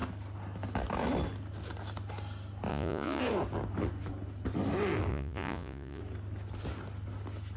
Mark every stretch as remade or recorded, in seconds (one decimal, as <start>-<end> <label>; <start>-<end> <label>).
0.0-2.7 recorded; 2.7-3.2 remade; 3.2-5.1 recorded; 5.1-6.0 remade; 6.0-7.6 recorded